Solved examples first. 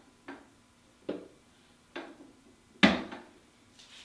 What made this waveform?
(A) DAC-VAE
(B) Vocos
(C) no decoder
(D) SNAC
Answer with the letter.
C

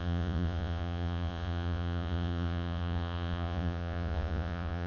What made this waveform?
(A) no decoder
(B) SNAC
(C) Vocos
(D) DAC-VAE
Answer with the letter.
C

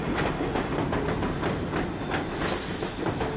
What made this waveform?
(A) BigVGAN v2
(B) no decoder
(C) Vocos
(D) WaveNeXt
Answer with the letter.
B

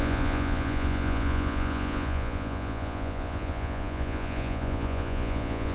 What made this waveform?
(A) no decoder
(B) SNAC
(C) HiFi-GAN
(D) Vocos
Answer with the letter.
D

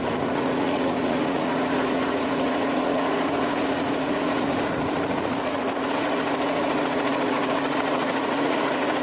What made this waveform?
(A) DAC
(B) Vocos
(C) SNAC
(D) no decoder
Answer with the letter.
B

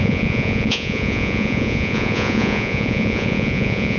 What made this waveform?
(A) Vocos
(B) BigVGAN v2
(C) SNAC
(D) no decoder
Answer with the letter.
A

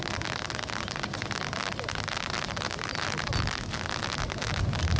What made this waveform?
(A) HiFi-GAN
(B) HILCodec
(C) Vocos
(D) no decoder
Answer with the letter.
D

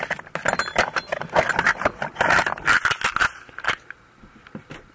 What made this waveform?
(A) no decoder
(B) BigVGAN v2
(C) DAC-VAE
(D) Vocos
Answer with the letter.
A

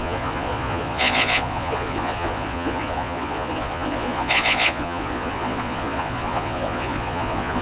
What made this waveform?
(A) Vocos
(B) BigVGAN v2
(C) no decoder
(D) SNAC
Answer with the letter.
A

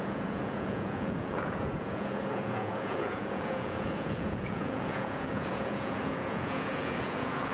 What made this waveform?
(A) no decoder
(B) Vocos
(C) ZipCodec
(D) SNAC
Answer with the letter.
B